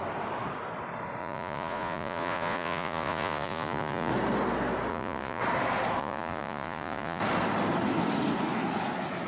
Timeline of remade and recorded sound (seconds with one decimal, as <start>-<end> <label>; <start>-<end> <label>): 0.0-1.2 recorded; 1.2-4.1 remade; 4.1-4.9 recorded; 4.9-5.4 remade; 5.4-6.0 recorded; 6.0-7.2 remade; 7.2-9.3 recorded